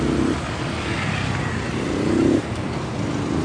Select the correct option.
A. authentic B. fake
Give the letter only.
A